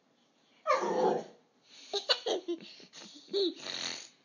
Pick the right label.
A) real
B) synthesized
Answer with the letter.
A